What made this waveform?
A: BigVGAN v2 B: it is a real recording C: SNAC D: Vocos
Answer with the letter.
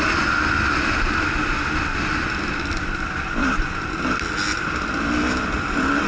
B